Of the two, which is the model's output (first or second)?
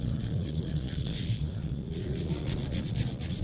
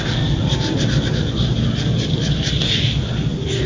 first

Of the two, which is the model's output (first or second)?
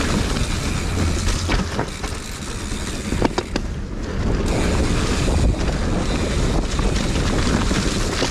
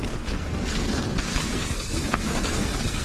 second